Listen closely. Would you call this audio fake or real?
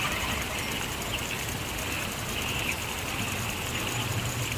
real